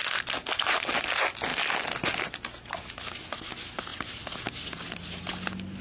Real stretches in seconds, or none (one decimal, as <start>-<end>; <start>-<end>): 0.0-5.8